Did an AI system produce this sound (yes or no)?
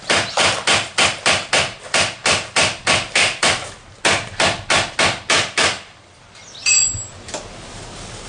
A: yes